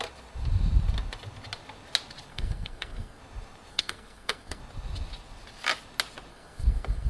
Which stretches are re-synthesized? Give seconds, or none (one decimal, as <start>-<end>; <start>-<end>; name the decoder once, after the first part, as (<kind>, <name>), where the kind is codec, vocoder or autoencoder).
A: 2.3-3.2 (codec, SNAC); 3.7-4.6; 6.3-7.1

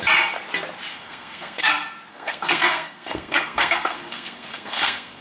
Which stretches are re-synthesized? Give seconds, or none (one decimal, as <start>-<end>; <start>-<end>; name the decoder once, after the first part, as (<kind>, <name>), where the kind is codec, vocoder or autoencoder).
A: 0.9-1.7 (codec, SNAC); 2.1-5.2

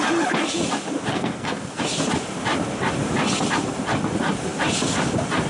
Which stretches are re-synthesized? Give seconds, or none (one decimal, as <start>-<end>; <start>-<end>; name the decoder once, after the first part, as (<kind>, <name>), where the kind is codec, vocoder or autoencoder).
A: 1.1-1.8 (codec, SNAC)

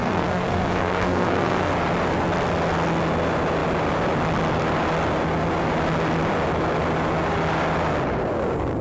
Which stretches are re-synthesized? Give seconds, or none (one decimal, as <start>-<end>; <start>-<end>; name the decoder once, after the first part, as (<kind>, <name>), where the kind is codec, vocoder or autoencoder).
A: 0.0-1.7 (codec, SNAC)